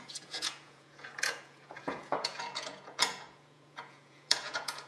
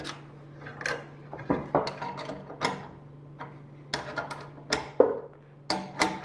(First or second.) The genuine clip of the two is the second